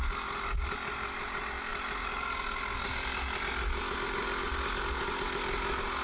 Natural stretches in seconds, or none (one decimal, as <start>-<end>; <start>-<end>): 0.0-6.0